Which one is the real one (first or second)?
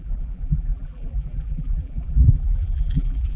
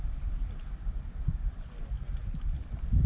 second